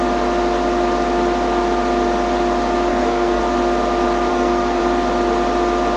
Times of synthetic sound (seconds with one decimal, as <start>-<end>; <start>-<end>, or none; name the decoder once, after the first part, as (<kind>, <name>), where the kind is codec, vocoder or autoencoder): 2.9-3.4 (codec, SNAC); 4.3-4.8